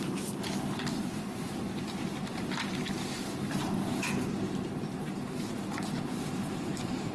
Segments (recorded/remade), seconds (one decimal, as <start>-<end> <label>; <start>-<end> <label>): 0.0-7.1 remade